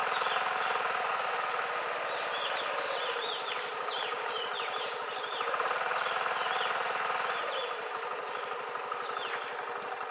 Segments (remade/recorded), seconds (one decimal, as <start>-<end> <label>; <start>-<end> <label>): 0.0-1.3 remade; 1.3-3.7 recorded; 3.7-8.6 remade; 8.6-10.1 recorded